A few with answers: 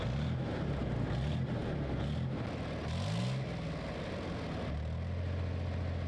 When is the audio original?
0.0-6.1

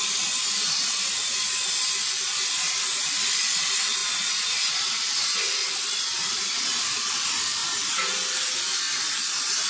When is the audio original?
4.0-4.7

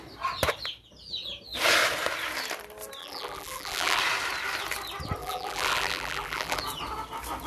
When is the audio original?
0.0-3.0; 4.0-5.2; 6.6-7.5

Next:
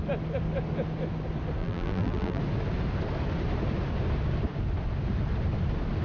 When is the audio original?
0.0-1.6; 2.4-6.0

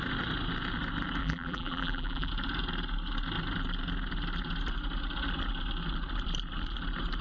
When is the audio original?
0.0-1.2; 2.3-7.2

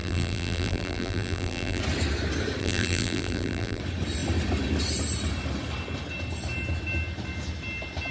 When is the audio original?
1.8-2.6; 3.8-8.1

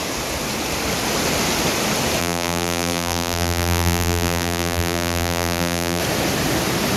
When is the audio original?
0.0-2.2; 6.0-7.0

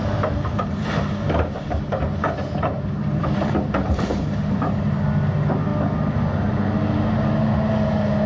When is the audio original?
5.0-8.3